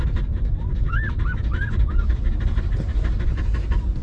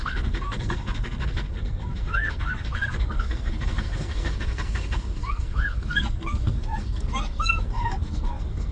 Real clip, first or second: first